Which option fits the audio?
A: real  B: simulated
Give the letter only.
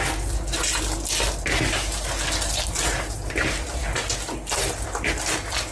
A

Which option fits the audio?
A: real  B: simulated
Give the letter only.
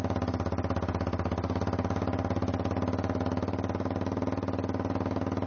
A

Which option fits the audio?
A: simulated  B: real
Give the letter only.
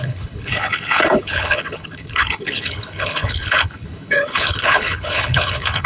A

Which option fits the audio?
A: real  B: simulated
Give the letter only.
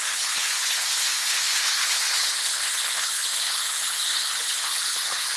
B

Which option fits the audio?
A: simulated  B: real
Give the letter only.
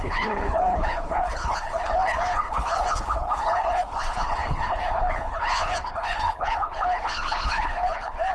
A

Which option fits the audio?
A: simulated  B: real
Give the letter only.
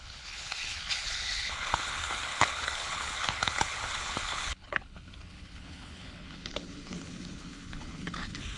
A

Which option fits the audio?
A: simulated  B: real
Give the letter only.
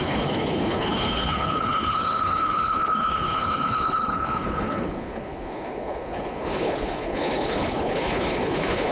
A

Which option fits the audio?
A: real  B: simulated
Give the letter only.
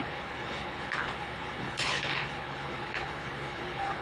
B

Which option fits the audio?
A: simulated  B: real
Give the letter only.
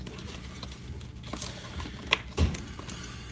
B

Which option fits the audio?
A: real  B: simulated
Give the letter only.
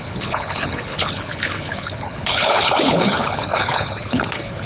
B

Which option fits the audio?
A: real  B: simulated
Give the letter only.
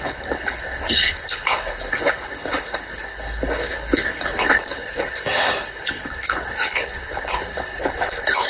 B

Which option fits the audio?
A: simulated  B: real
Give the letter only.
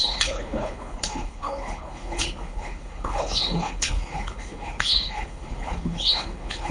A